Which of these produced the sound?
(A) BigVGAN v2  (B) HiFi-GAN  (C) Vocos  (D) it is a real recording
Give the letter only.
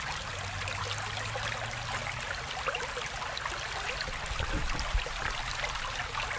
D